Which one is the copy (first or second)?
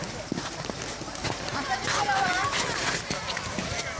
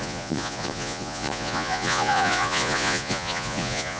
second